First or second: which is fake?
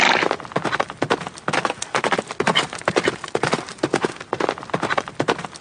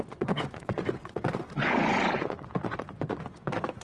second